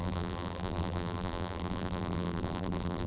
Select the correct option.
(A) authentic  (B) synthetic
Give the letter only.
B